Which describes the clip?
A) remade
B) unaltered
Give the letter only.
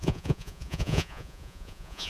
A